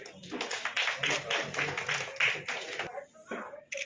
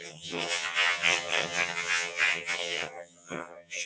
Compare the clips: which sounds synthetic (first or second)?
second